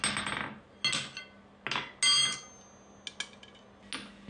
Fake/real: real